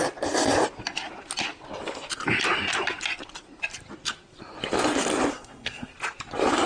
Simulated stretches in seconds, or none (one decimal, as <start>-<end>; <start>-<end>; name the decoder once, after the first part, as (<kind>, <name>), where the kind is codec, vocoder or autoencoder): 5.3-5.9 (codec, SNAC)